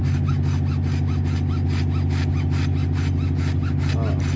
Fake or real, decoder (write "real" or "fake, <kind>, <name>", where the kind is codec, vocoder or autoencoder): real